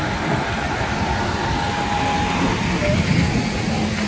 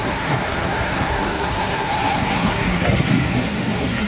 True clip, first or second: first